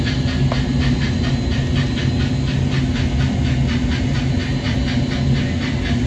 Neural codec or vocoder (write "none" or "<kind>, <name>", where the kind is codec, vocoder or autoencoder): none